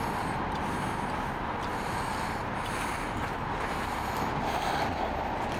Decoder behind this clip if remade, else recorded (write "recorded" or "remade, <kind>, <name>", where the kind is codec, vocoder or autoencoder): recorded